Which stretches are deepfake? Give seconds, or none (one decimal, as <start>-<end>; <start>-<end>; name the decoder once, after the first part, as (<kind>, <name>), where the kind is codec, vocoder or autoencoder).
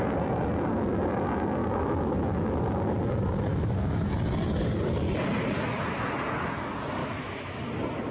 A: 1.6-2.6 (autoencoder, DAC-VAE); 3.5-4.1; 7.0-7.6